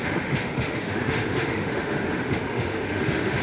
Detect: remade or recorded remade